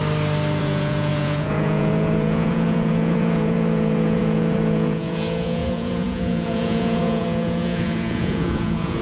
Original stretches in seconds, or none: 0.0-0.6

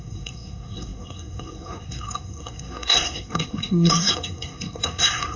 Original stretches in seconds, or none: none

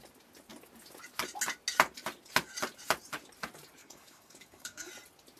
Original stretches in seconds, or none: 0.0-3.8; 4.9-5.4

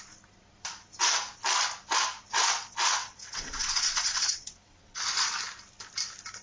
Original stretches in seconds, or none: 0.0-3.0; 5.0-6.4

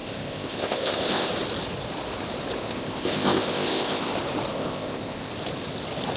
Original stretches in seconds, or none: 1.3-2.6; 4.1-4.5; 5.3-6.2